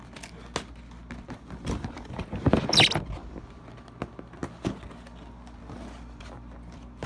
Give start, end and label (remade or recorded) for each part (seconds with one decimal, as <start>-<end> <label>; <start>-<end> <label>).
0.0-7.1 recorded